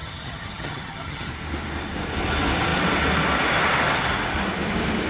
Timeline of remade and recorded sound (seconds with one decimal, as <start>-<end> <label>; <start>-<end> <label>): 0.0-1.3 remade; 1.3-5.1 recorded